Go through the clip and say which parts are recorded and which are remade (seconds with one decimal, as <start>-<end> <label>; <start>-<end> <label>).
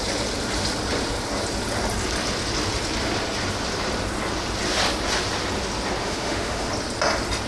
0.0-6.0 recorded; 6.0-6.7 remade; 6.7-7.5 recorded